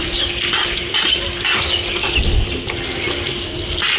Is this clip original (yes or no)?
yes